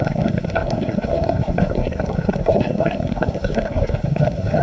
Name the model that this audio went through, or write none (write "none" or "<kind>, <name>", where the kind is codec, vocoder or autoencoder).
codec, SNAC